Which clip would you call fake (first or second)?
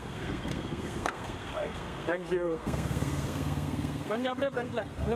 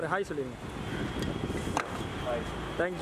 first